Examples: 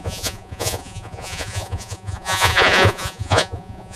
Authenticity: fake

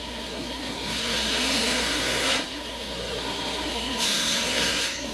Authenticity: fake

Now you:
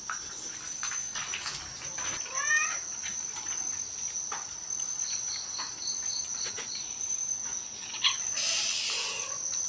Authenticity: real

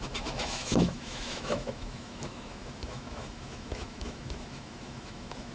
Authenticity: fake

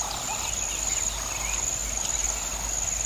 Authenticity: real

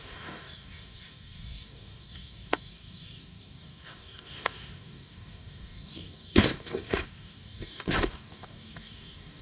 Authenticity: fake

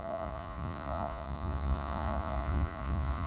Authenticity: fake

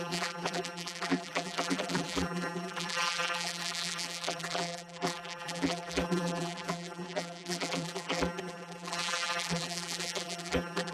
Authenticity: fake